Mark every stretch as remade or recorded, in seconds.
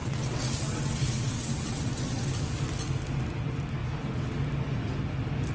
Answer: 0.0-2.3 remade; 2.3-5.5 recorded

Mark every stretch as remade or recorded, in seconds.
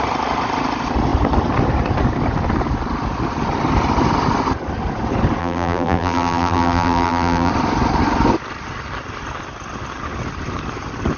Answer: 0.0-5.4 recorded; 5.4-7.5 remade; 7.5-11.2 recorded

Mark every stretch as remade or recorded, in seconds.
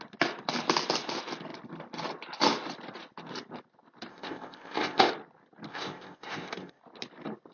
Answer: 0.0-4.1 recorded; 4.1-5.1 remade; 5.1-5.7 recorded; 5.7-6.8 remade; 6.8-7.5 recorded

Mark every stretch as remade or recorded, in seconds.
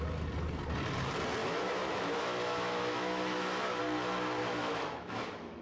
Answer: 0.0-1.4 recorded; 1.4-3.8 remade; 3.8-4.4 recorded; 4.4-5.6 remade